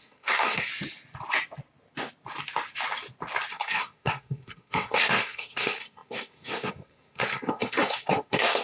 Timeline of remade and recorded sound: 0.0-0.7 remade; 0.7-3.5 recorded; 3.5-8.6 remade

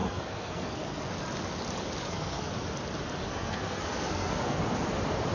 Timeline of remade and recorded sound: 0.0-1.1 remade; 1.1-2.0 recorded; 2.0-2.5 remade; 2.5-3.2 recorded; 3.2-4.6 remade; 4.6-5.3 recorded

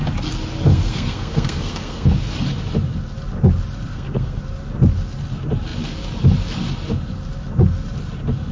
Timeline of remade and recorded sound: 0.0-0.7 recorded; 0.7-2.1 remade; 2.1-3.9 recorded; 3.9-4.4 remade; 4.4-8.5 recorded

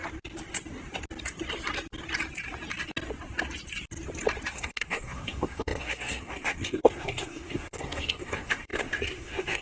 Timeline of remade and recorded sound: 0.0-4.5 recorded; 4.5-9.6 remade

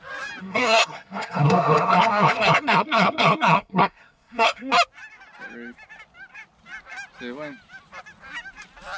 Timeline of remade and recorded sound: 0.0-0.4 recorded; 0.4-4.7 remade; 4.7-9.0 recorded

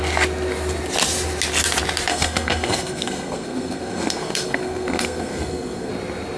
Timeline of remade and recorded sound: 0.0-2.1 recorded; 2.1-5.9 remade; 5.9-6.4 recorded